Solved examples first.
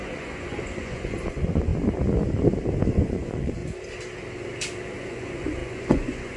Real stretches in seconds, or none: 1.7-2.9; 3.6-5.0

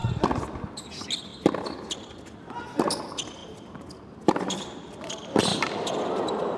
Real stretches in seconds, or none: 0.0-6.6